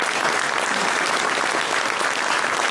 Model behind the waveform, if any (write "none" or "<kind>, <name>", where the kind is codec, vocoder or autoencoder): none